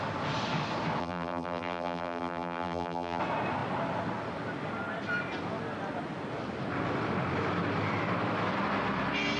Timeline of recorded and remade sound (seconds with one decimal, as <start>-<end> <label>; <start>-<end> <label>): 0.0-1.0 recorded; 1.0-3.2 remade; 3.2-9.4 recorded